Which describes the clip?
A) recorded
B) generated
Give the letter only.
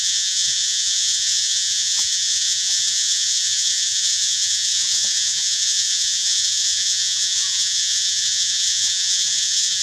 B